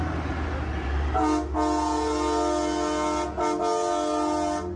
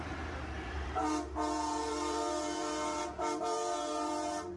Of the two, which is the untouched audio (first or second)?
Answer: first